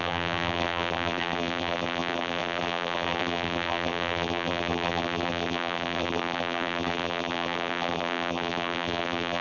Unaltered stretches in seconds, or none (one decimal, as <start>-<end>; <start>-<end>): none